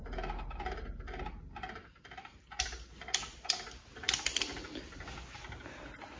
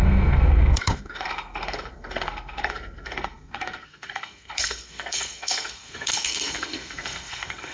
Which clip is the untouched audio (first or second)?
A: first